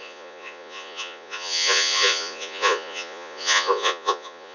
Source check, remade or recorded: remade